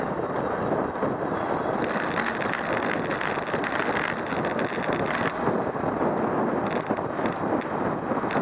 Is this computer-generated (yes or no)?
no